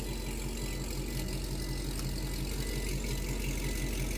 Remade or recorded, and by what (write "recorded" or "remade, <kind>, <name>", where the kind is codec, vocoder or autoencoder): recorded